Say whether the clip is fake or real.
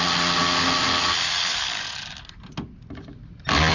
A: real